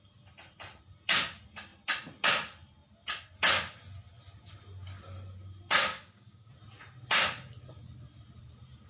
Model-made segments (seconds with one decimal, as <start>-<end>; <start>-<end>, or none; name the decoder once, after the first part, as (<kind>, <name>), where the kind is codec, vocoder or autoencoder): 5.9-6.5 (codec, DAC)